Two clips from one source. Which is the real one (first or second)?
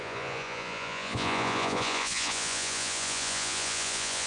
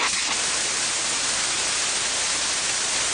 second